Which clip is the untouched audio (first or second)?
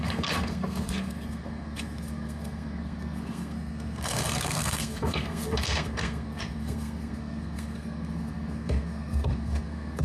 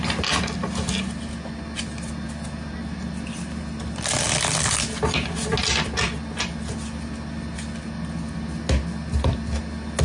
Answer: second